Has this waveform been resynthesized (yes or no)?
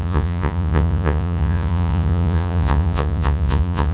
yes